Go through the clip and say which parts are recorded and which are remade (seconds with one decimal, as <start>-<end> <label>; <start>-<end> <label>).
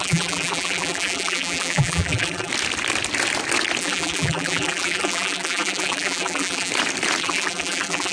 0.0-2.5 remade; 2.5-3.8 recorded; 3.8-6.7 remade; 6.7-7.2 recorded; 7.2-8.1 remade